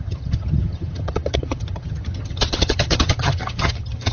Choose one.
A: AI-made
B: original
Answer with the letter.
A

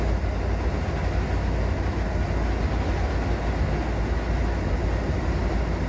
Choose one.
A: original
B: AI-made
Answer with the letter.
A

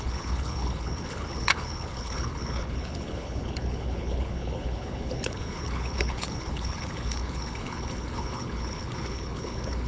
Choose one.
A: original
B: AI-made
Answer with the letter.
B